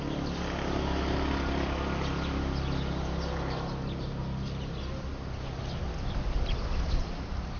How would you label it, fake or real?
real